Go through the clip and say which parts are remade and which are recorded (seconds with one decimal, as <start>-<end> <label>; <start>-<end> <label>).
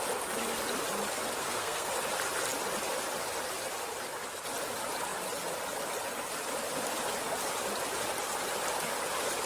0.0-1.4 recorded; 1.4-1.9 remade; 1.9-9.5 recorded